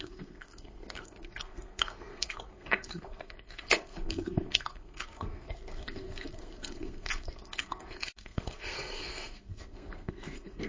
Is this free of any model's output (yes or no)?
no